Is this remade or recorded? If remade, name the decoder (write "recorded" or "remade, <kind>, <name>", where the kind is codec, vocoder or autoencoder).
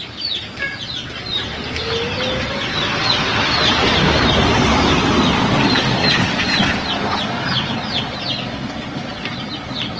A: recorded